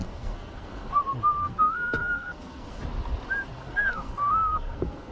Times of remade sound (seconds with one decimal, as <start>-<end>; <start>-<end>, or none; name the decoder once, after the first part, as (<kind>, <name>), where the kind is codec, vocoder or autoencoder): 0.0-1.0 (codec, SNAC); 1.4-2.8; 3.5-5.1

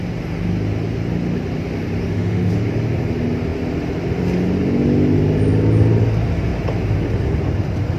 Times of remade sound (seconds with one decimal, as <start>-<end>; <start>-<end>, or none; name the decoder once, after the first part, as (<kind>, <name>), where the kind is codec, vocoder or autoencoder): 2.0-2.5 (autoencoder, DAC-VAE)

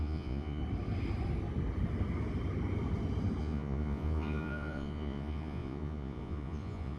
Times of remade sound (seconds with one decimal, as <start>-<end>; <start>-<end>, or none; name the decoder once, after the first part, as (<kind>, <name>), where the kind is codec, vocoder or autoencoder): 0.0-0.6 (vocoder, Vocos); 3.4-7.0

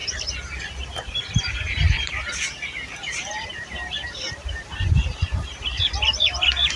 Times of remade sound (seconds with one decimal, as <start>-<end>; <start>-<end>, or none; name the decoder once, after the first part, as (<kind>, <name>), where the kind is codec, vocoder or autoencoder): 0.8-6.8 (vocoder, BigVGAN v2)

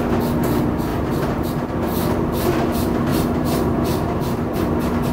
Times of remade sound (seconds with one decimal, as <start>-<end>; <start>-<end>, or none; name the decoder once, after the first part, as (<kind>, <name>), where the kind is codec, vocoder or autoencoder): 0.9-1.7 (vocoder, BigVGAN v2); 3.1-4.2

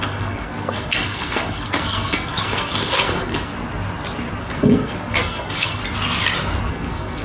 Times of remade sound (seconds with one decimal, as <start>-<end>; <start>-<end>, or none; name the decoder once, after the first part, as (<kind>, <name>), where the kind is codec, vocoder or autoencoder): 0.0-3.5 (codec, SNAC); 4.4-5.8; 6.7-7.2